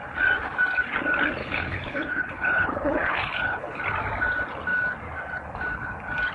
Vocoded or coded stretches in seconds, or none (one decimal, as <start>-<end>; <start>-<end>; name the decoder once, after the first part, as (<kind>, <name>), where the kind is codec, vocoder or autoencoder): 1.4-3.8 (codec, HILCodec)